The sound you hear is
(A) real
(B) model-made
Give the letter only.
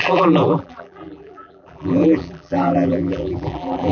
B